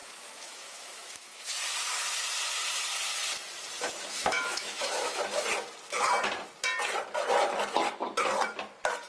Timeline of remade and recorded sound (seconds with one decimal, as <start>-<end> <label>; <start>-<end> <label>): 0.0-1.5 remade; 1.5-4.2 recorded; 4.2-5.2 remade; 5.2-9.1 recorded